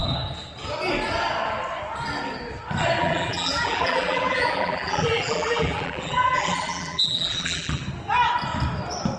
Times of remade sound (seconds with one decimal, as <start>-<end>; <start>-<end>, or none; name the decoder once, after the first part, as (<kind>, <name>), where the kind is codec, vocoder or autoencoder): 3.0-7.8 (vocoder, BigVGAN v2)